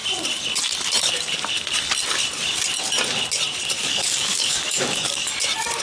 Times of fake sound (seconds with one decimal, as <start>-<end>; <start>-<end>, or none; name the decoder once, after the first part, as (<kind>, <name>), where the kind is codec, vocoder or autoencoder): 3.8-5.3 (codec, DAC)